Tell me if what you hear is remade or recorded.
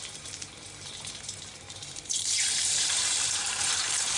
remade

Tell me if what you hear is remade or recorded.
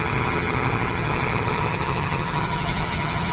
remade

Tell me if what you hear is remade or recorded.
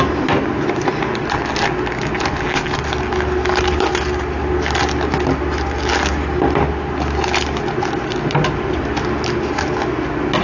recorded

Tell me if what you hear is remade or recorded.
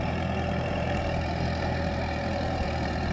remade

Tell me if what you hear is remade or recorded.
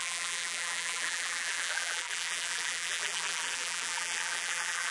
remade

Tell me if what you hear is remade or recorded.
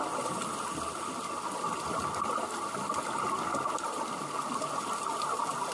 recorded